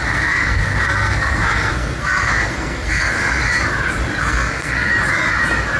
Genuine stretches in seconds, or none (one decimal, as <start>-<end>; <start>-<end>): 3.2-4.2; 4.9-5.8